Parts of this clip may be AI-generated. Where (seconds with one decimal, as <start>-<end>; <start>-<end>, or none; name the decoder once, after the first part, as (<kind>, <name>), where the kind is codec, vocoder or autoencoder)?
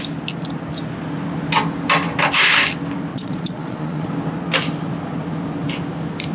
3.1-4.1 (vocoder, Vocos)